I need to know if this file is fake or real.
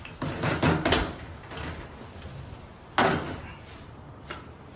real